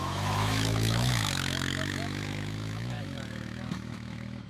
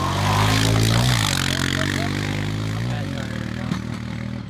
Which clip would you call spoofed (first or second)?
first